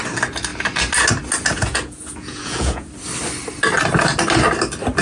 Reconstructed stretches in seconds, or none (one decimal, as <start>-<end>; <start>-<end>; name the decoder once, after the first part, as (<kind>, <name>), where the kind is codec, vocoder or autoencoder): 1.5-2.9 (vocoder, Vocos)